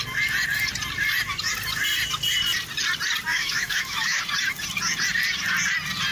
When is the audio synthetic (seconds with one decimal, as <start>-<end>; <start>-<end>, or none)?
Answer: 3.3-4.2